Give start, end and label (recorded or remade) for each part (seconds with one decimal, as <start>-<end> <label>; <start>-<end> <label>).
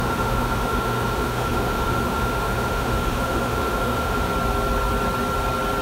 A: 0.0-4.3 remade; 4.3-5.8 recorded